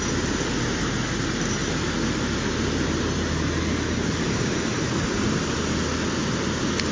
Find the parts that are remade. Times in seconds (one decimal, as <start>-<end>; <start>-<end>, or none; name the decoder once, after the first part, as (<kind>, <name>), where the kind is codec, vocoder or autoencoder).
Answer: none

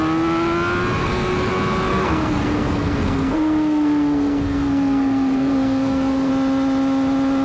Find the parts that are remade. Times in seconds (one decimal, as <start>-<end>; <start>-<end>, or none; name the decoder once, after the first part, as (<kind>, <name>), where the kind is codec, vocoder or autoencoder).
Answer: 1.0-1.5 (codec, SNAC); 1.9-6.3

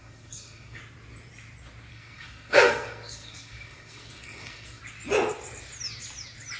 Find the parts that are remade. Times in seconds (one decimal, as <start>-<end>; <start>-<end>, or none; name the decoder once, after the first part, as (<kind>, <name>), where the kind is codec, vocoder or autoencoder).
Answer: 0.0-0.8 (codec, SNAC); 1.9-4.8

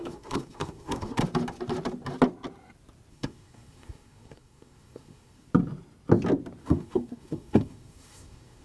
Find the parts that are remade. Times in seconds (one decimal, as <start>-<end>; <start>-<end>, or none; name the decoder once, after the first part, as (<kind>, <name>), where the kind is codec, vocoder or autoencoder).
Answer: 0.0-1.2 (codec, SNAC); 3.1-5.5; 6.6-8.6